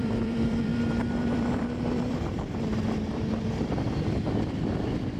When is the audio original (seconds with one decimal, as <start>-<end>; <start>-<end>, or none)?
none

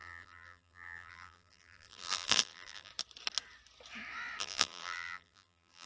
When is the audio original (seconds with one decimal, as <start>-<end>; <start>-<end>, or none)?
2.9-4.4

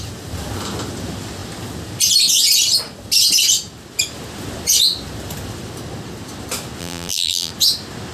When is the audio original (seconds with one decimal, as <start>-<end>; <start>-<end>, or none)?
0.0-6.8; 7.5-8.1

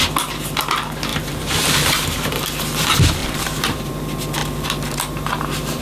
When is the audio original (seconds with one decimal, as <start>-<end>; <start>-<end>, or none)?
0.0-1.1; 2.5-3.2; 3.9-4.4